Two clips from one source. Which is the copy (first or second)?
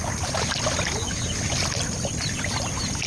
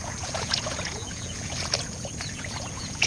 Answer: second